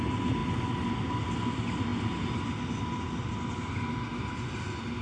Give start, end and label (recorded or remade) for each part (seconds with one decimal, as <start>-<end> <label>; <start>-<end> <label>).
0.0-5.0 recorded

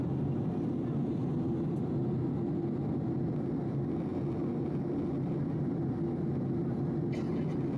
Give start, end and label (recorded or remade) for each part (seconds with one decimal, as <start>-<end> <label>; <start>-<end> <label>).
0.0-7.8 recorded

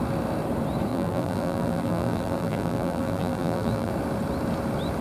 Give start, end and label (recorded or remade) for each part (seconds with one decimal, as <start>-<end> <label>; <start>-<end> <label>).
0.0-0.9 recorded; 0.9-3.9 remade; 3.9-5.0 recorded

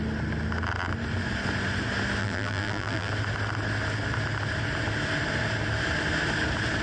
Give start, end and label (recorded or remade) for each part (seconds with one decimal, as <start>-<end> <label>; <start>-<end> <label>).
0.0-2.2 recorded; 2.2-3.1 remade; 3.1-6.8 recorded

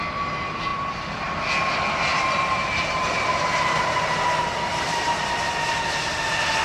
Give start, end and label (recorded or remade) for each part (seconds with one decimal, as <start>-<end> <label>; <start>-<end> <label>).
0.0-2.1 recorded; 2.1-3.0 remade; 3.0-4.7 recorded; 4.7-5.7 remade; 5.7-6.6 recorded

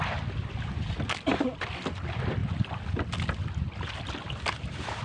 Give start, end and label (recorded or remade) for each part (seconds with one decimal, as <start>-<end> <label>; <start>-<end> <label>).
0.0-5.0 recorded

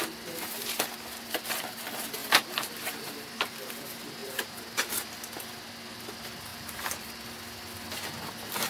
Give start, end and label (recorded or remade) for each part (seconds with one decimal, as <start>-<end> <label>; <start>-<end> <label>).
0.0-2.2 recorded; 2.2-3.7 remade; 3.7-4.2 recorded; 4.2-4.9 remade; 4.9-6.5 recorded; 6.5-7.1 remade; 7.1-8.7 recorded

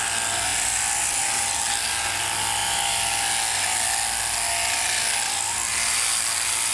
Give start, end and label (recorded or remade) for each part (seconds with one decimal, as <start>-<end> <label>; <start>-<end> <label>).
0.0-6.7 recorded